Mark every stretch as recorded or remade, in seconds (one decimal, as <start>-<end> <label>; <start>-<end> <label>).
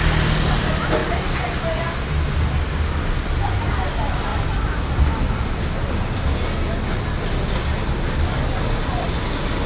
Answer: 0.0-9.7 recorded